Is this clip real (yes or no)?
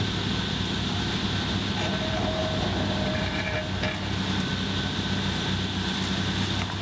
yes